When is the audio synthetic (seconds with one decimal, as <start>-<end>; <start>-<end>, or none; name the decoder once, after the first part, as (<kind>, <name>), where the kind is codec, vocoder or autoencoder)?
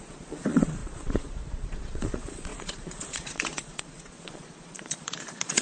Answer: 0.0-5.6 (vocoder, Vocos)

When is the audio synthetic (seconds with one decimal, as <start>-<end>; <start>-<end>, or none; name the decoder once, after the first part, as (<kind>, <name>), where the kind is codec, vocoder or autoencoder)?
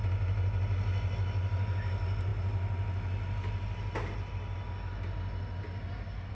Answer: none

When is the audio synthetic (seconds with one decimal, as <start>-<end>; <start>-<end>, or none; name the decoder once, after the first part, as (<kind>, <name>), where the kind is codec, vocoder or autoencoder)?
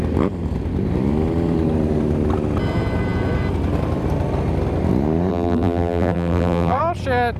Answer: 5.3-6.8 (vocoder, BigVGAN v2)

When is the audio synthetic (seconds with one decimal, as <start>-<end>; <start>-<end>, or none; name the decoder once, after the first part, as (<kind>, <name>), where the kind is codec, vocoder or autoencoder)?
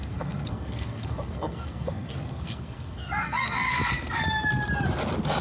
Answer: 0.0-3.8 (codec, SNAC)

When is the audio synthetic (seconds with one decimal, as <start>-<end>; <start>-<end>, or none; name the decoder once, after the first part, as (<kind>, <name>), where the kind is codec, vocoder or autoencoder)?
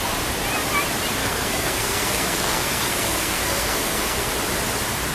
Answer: 1.2-4.3 (codec, SNAC)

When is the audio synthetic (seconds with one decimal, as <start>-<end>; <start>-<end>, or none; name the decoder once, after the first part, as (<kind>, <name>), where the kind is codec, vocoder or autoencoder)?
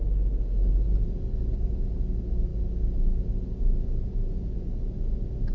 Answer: none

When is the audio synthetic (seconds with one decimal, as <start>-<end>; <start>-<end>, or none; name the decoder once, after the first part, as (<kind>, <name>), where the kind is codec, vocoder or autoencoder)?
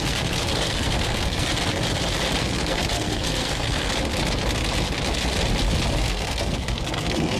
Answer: 0.0-1.5 (codec, SNAC); 2.4-3.9; 5.9-7.4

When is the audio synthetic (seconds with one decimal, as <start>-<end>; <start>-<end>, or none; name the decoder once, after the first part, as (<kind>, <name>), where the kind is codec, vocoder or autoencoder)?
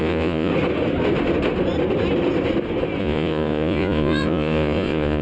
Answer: 0.0-0.5 (vocoder, Vocos); 3.0-5.2